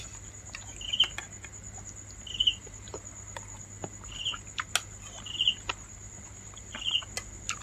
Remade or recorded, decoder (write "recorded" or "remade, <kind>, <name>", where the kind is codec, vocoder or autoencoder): recorded